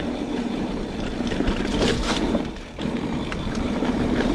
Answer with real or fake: fake